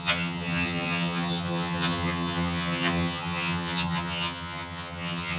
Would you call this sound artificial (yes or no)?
yes